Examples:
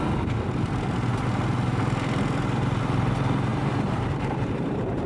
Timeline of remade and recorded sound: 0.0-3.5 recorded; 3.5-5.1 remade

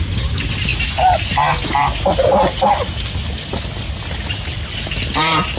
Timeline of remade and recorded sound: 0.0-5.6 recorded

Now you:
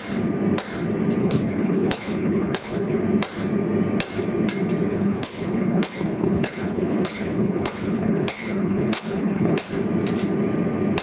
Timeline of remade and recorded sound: 0.0-1.2 recorded; 1.2-3.0 remade; 3.0-4.9 recorded; 4.9-9.7 remade; 9.7-11.0 recorded

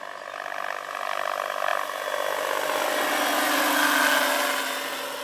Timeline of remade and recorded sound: 0.0-5.2 recorded

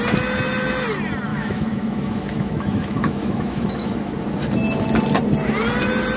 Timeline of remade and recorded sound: 0.0-1.3 recorded; 1.3-4.1 remade; 4.1-6.2 recorded

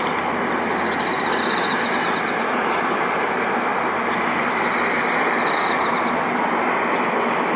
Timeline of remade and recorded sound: 0.0-7.6 recorded